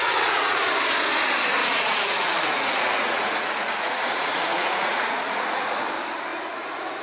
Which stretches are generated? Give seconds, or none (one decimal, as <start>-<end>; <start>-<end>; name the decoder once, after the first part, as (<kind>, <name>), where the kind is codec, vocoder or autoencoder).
0.0-0.6 (vocoder, Vocos); 1.6-5.8; 6.3-7.0